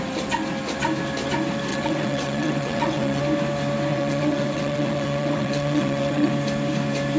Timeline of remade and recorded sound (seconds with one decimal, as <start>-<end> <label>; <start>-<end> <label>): 0.0-1.7 recorded; 1.7-3.2 remade; 3.2-3.9 recorded; 3.9-6.3 remade; 6.3-7.2 recorded